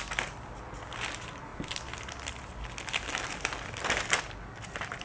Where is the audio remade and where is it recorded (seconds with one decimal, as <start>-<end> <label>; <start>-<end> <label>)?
0.0-5.0 recorded